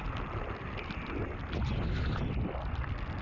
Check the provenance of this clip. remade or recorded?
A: recorded